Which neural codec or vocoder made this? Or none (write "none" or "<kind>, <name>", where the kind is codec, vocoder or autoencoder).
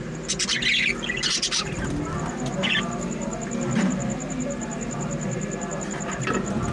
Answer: none